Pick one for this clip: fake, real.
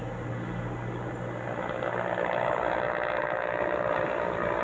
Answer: real